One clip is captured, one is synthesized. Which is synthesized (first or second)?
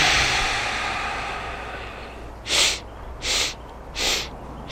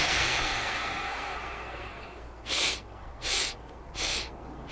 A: second